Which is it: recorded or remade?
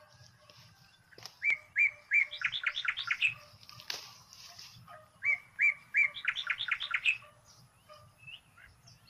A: recorded